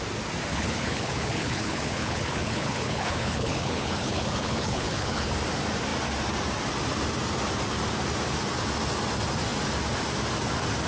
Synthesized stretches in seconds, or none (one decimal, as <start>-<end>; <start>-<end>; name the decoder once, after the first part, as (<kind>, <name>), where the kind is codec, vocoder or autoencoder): 0.5-5.3 (codec, HILCodec)